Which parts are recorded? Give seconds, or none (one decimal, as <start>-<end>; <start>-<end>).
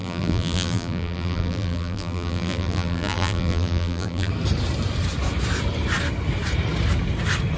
4.3-7.6